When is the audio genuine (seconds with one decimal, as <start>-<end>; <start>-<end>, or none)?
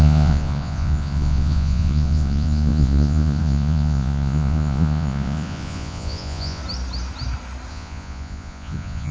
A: 6.6-7.7